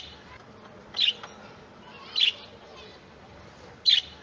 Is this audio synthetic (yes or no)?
no